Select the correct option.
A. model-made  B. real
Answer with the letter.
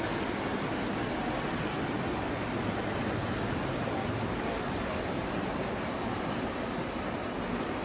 B